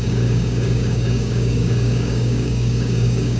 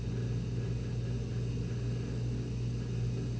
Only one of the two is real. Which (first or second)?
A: second